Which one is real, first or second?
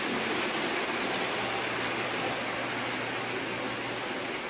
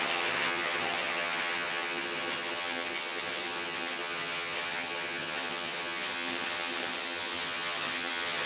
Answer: first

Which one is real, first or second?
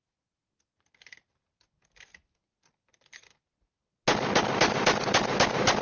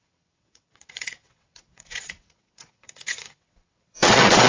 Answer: first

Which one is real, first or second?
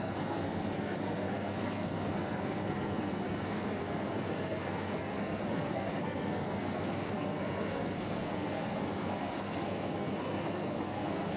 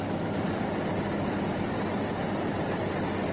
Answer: second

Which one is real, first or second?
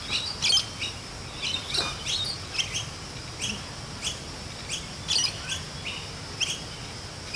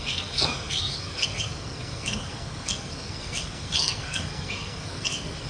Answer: first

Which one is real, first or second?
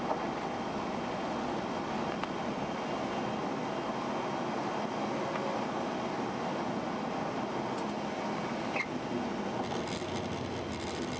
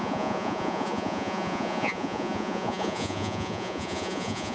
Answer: first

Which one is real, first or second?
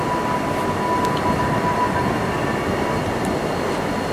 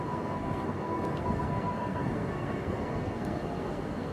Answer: first